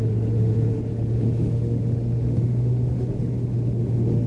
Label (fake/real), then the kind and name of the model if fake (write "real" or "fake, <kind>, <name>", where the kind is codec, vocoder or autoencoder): fake, autoencoder, DAC-VAE